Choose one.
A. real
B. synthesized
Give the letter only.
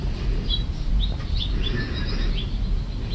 A